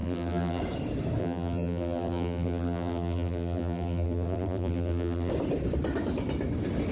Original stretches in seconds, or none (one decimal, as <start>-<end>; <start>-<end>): 0.6-1.2; 5.3-6.9